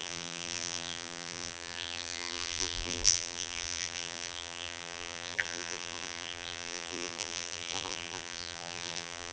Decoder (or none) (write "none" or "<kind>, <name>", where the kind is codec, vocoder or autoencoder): vocoder, BigVGAN v2